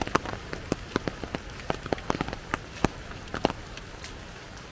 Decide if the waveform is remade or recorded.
recorded